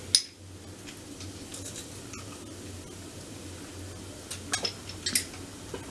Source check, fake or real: real